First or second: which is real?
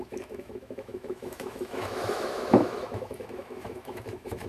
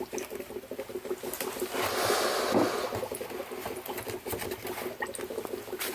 second